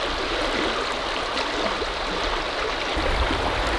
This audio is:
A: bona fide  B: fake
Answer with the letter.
A